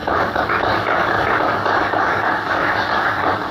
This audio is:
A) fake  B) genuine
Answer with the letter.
A